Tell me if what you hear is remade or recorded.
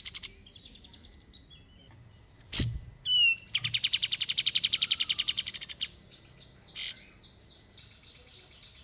recorded